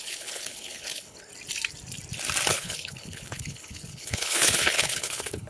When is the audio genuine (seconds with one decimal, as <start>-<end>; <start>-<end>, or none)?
1.3-2.5